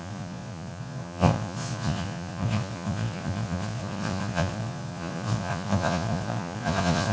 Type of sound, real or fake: fake